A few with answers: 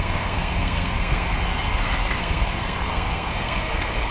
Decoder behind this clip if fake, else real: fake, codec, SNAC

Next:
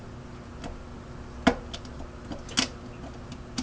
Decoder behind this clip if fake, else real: real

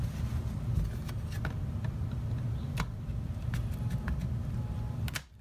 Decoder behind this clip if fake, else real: real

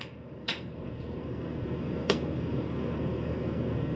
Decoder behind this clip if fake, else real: fake, codec, SNAC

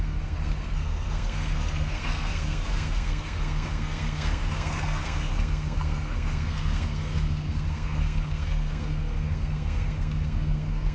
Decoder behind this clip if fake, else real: fake, codec, SNAC